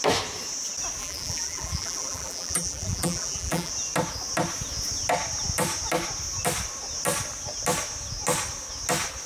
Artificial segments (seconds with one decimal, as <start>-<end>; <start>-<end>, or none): 1.0-3.7